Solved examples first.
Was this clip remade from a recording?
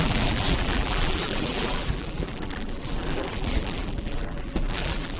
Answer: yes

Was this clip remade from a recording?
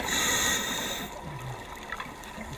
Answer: no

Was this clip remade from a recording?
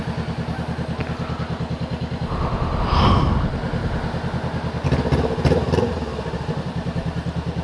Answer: no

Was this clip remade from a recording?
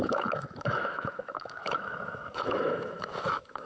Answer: yes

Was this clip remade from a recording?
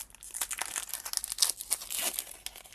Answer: no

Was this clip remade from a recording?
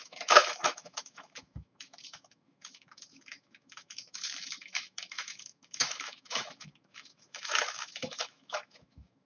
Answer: yes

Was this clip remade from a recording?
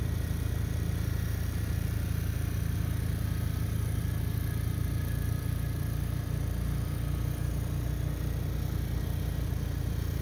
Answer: no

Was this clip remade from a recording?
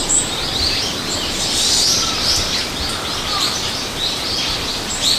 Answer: no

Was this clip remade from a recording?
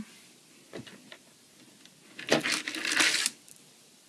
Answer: no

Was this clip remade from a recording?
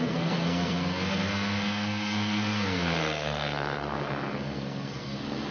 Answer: yes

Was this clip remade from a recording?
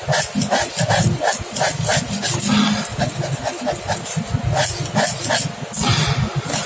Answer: no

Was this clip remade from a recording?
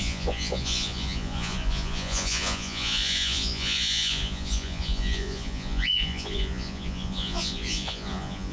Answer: yes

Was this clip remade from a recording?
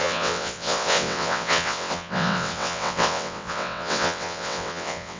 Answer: yes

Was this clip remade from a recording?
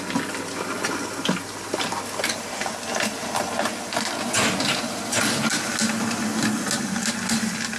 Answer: no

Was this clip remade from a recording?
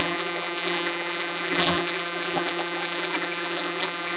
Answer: yes